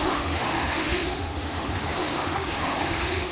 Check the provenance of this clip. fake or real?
fake